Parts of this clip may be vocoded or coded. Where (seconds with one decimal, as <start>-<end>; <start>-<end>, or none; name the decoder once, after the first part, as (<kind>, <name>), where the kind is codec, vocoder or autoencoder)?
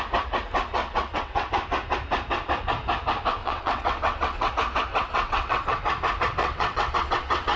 0.8-1.5 (vocoder, WaveNeXt); 3.4-4.5; 4.9-5.8; 6.4-7.6